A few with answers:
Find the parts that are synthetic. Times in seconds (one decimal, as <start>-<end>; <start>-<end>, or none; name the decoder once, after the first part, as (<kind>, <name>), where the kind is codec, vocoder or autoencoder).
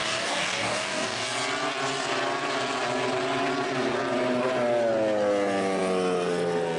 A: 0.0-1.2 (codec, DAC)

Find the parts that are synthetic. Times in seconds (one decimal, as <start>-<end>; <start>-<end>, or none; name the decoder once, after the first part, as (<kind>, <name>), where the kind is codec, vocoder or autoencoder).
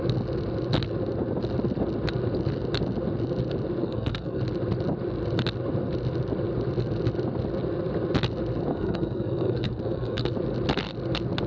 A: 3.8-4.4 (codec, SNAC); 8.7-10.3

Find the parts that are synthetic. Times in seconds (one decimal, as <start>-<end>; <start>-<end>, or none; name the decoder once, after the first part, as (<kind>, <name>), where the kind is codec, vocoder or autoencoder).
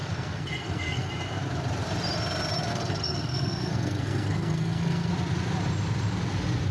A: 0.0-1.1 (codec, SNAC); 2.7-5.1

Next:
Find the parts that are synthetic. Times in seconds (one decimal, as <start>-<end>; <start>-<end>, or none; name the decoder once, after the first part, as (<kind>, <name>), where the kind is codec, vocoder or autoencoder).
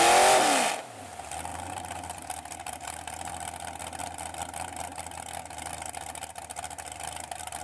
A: 1.5-3.3 (vocoder, BigVGAN v2)